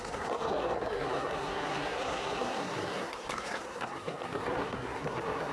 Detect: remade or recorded remade